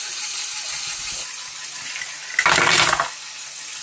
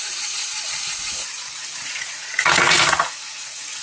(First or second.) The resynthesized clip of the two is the second